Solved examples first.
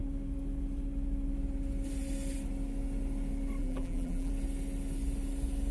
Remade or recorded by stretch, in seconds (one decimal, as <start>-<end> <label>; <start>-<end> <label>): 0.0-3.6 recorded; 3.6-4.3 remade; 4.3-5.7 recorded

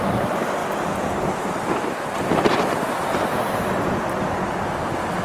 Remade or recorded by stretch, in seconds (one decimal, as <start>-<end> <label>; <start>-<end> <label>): 0.0-5.2 recorded

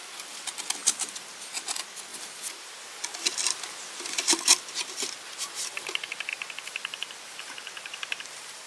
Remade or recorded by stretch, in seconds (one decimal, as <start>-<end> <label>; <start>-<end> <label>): 0.0-0.8 recorded; 0.8-1.5 remade; 1.5-2.1 recorded; 2.1-4.3 remade; 4.3-6.3 recorded; 6.3-8.7 remade